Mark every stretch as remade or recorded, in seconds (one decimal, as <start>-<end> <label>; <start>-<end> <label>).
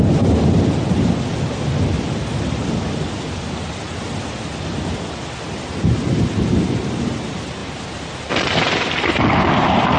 0.0-7.6 recorded; 7.6-8.3 remade; 8.3-10.0 recorded